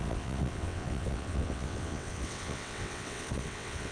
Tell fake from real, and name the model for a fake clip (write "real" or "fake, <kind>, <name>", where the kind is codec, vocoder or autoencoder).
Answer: fake, vocoder, WaveNeXt